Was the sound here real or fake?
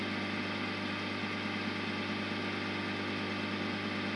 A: real